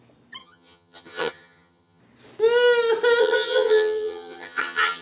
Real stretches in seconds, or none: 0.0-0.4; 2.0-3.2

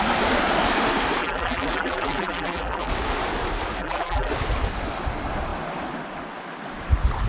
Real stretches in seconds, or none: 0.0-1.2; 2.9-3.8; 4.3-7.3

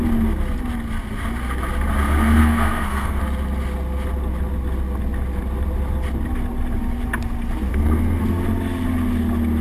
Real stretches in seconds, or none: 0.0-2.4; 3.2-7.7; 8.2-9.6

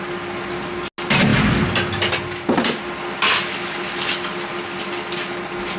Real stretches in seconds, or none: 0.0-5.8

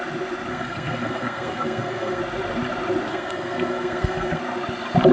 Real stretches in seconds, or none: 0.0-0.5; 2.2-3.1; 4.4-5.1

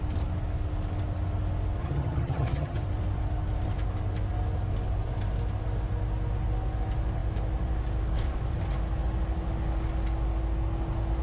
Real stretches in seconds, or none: 0.0-1.8; 2.8-11.2

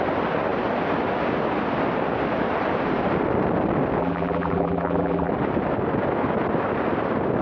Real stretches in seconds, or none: 0.0-4.0; 5.3-7.4